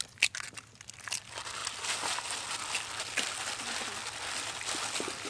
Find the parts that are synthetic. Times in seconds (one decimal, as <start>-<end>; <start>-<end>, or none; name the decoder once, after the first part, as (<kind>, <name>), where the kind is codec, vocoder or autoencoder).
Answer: none